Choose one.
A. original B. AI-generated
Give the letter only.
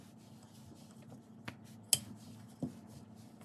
A